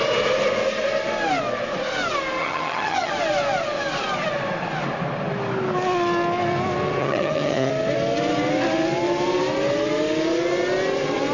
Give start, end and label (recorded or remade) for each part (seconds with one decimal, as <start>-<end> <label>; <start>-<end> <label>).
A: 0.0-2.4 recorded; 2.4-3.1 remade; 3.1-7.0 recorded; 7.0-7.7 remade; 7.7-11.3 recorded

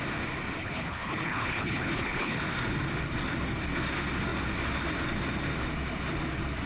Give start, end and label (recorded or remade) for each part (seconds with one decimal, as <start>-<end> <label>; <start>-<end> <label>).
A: 0.0-0.6 recorded; 0.6-2.4 remade; 2.4-6.7 recorded

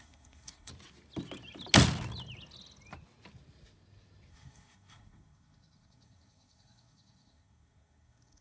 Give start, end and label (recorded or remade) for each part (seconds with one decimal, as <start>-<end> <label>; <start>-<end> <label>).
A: 0.0-0.7 remade; 0.7-4.3 recorded; 4.3-8.4 remade

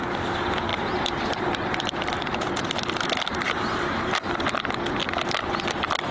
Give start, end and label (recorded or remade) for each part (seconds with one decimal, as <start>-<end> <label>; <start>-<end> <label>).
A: 0.0-0.7 recorded; 0.7-4.4 remade; 4.4-6.1 recorded